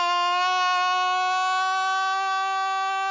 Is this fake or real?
real